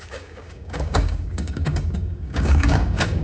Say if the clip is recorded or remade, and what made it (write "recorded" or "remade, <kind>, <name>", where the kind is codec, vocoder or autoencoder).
remade, codec, DAC